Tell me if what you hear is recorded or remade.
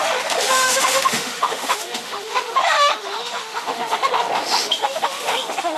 remade